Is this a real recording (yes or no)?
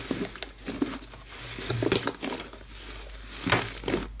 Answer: yes